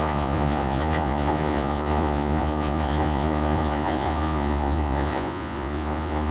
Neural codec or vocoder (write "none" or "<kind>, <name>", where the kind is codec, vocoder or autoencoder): vocoder, Vocos